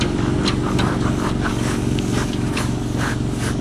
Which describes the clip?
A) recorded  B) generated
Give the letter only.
B